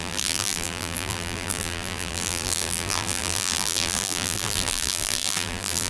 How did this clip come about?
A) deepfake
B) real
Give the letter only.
A